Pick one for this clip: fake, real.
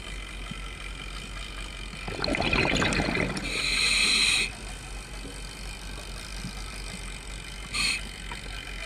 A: real